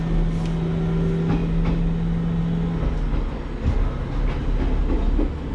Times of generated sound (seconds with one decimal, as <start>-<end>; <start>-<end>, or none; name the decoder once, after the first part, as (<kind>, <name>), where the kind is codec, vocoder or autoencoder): none